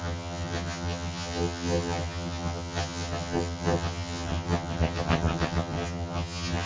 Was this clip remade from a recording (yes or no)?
yes